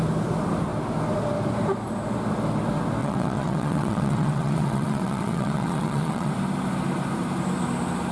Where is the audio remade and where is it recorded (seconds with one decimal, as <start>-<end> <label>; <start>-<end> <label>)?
0.0-3.0 recorded; 3.0-6.3 remade; 6.3-8.1 recorded